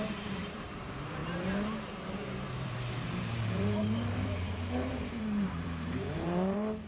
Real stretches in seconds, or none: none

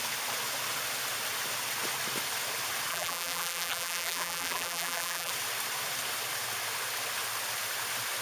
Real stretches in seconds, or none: 0.0-2.9; 5.3-8.2

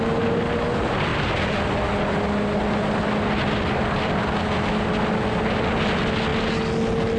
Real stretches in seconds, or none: 0.0-7.2

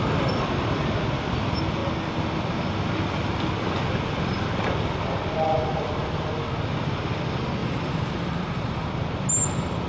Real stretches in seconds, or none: 0.0-7.6; 8.9-9.9

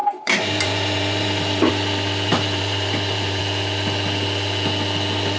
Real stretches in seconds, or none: 1.7-2.3; 3.4-5.4

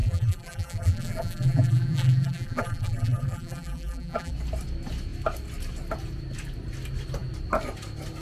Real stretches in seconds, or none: 4.3-8.2

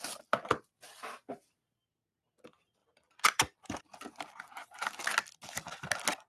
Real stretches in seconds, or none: 0.0-6.3

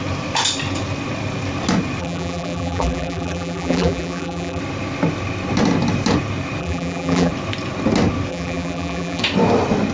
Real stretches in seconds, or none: 0.0-2.0; 4.6-6.6; 7.3-8.3; 9.2-9.9